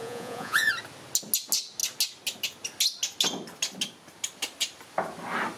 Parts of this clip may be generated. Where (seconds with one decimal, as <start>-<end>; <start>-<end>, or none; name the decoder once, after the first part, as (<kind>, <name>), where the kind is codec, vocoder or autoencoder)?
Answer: 0.0-0.7 (vocoder, Vocos)

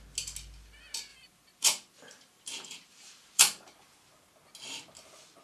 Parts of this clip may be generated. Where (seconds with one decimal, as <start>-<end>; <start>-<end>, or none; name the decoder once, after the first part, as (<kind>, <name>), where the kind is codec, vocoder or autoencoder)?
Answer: 1.1-4.3 (vocoder, BigVGAN v2)

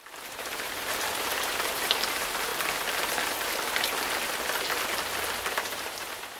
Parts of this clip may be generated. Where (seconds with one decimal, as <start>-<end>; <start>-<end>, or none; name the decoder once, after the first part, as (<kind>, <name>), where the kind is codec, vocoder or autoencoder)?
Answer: 0.0-2.5 (vocoder, BigVGAN v2); 5.5-6.4

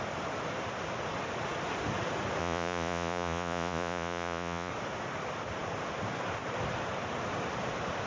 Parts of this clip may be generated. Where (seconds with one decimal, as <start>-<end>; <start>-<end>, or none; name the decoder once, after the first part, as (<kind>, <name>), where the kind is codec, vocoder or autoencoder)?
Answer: 2.4-4.7 (vocoder, Vocos)

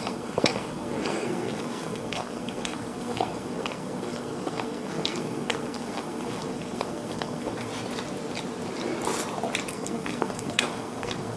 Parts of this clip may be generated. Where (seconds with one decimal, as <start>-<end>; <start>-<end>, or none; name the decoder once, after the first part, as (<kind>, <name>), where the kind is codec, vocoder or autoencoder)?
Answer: 0.0-7.7 (codec, SNAC); 9.7-11.4

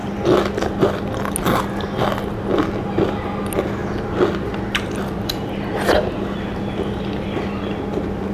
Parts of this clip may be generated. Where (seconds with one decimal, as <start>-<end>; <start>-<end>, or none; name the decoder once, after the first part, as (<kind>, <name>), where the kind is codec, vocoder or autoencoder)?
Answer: none

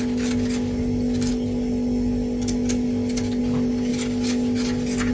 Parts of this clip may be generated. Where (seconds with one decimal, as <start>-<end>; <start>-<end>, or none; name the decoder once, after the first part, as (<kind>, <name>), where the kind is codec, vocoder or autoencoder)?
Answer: none